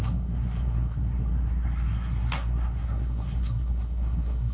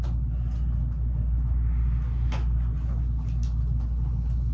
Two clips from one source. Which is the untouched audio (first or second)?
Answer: second